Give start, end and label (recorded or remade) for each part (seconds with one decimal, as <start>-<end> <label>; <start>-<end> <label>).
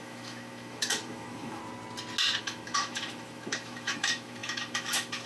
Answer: 0.0-1.6 remade; 1.6-2.4 recorded; 2.4-5.3 remade